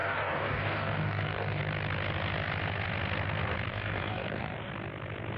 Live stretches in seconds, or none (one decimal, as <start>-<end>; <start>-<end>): 1.6-3.7; 4.7-5.4